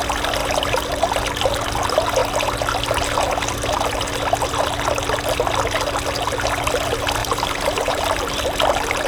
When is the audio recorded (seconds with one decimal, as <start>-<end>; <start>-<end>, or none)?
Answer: 0.0-7.2; 8.0-9.1

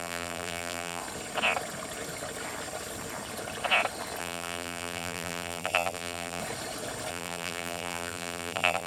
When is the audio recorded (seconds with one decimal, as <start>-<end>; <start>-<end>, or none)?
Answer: 1.0-4.2; 6.4-7.1

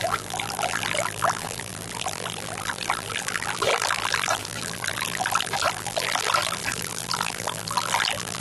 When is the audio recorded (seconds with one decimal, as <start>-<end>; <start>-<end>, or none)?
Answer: none

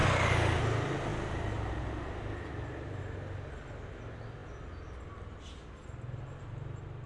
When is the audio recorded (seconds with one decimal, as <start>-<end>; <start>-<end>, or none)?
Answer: 0.0-7.1